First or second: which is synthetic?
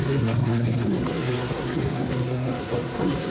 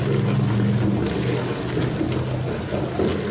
first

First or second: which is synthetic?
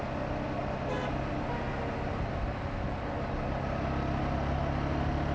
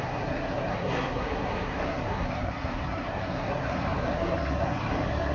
second